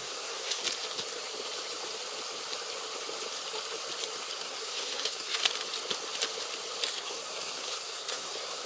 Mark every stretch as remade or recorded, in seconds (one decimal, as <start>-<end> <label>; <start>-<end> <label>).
0.0-0.6 remade; 0.6-4.4 recorded; 4.4-5.4 remade; 5.4-6.9 recorded; 6.9-8.7 remade